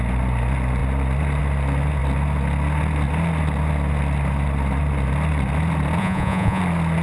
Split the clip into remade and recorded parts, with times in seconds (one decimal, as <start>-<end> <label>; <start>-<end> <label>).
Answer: 0.0-6.0 recorded; 6.0-6.6 remade; 6.6-7.0 recorded